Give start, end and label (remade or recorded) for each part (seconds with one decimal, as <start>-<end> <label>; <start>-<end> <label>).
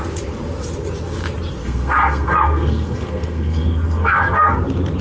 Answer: 0.0-1.6 recorded; 1.6-4.6 remade; 4.6-5.0 recorded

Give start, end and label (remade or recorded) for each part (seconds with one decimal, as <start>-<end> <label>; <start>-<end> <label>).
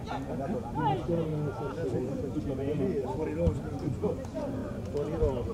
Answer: 0.0-0.7 recorded; 0.7-1.3 remade; 1.3-1.9 recorded; 1.9-3.0 remade; 3.0-3.7 recorded; 3.7-4.6 remade; 4.6-5.5 recorded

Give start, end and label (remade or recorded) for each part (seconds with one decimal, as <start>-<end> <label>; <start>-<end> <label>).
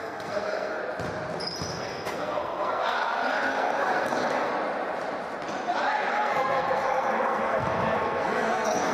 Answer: 0.0-0.8 remade; 0.8-1.7 recorded; 1.7-4.5 remade; 4.5-6.1 recorded; 6.1-8.9 remade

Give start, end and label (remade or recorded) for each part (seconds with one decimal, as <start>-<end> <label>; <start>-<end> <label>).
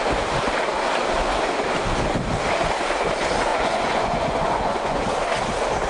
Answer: 0.0-3.5 recorded; 3.5-5.0 remade; 5.0-5.9 recorded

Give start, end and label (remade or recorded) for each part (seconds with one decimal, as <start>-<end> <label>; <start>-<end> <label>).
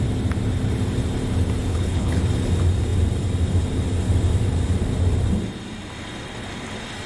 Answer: 0.0-1.7 recorded; 1.7-2.2 remade; 2.2-7.1 recorded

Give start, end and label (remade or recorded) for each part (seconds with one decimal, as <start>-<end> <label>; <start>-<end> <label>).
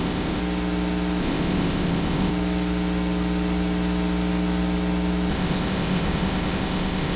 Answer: 0.0-0.4 remade; 0.4-1.2 recorded; 1.2-2.3 remade; 2.3-5.3 recorded; 5.3-7.2 remade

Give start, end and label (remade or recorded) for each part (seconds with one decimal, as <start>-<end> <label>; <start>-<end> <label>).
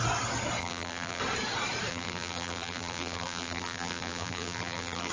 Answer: 0.0-0.6 recorded; 0.6-1.2 remade; 1.2-1.9 recorded; 1.9-5.1 remade